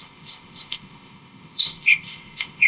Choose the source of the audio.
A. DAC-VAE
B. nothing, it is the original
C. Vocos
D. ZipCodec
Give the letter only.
D